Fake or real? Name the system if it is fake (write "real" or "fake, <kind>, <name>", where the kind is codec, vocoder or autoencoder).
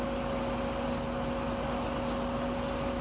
real